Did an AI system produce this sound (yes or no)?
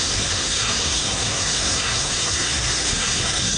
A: yes